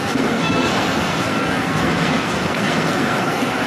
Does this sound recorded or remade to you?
remade